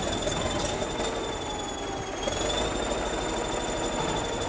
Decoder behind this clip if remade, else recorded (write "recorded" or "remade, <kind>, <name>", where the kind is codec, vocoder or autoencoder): recorded